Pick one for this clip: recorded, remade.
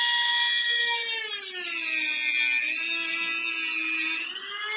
recorded